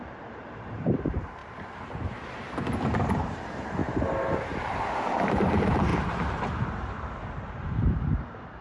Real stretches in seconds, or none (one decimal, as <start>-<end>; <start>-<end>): none